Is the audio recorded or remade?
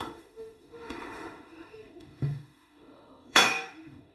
remade